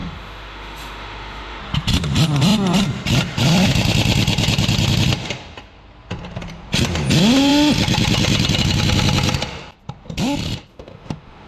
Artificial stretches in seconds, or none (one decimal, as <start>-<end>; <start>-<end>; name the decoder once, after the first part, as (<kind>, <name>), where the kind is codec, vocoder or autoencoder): 0.0-1.6 (autoencoder, DAC-VAE); 10.7-11.5